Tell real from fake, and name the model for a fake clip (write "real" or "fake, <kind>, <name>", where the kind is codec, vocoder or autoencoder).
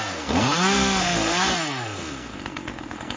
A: fake, codec, SNAC